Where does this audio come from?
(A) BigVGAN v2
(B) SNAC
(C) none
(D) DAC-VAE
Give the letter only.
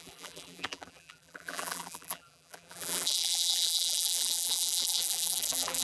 A